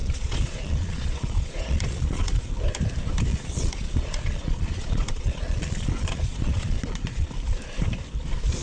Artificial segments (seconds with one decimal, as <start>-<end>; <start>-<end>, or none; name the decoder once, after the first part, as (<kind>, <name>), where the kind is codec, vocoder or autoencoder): 0.0-2.5 (vocoder, Vocos); 3.3-7.3